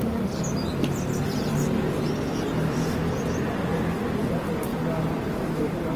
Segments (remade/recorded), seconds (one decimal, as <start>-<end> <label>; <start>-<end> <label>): 0.0-6.0 recorded